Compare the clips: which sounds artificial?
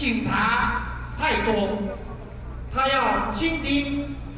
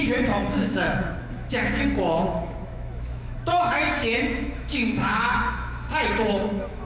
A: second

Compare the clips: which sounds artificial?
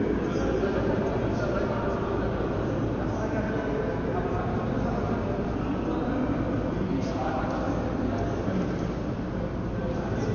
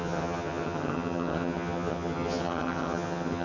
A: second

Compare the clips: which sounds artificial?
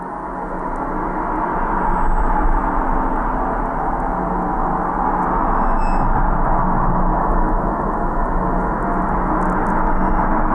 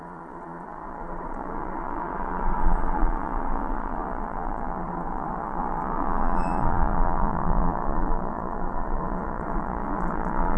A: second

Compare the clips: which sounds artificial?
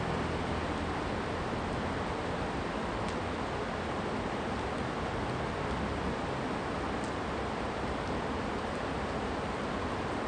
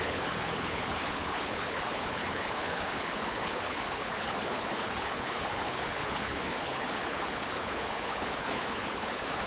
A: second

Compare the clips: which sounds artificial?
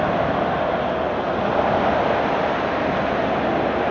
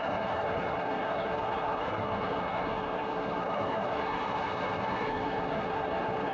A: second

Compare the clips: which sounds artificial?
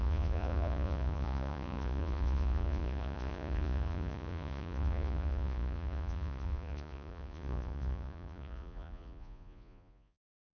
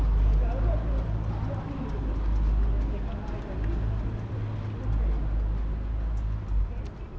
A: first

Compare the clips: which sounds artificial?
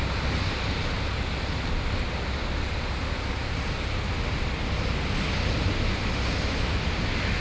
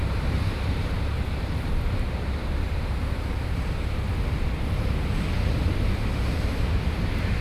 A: second